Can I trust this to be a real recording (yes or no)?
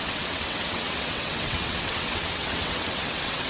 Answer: no